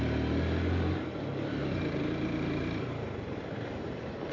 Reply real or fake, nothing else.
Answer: fake